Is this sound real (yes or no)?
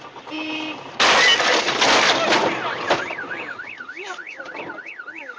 yes